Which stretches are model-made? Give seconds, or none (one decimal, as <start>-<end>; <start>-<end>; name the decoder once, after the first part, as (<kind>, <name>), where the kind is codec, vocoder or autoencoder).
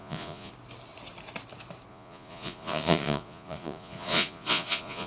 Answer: 0.0-0.5 (vocoder, Vocos); 1.9-5.1